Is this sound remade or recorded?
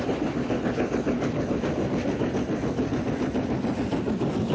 recorded